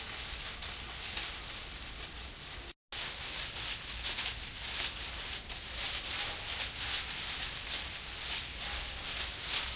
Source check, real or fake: real